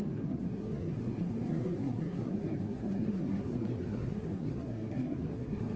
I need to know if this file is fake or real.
fake